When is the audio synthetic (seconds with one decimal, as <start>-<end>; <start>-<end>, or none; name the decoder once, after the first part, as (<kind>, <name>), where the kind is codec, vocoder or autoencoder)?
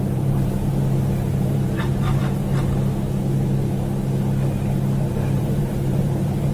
0.0-0.7 (vocoder, BigVGAN v2); 1.3-2.2; 5.1-6.5